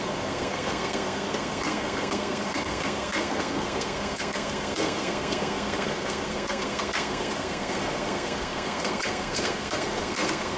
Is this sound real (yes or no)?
no